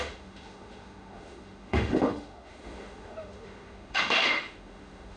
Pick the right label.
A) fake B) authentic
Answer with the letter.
A